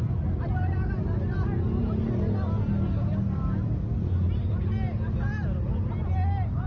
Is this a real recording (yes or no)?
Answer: yes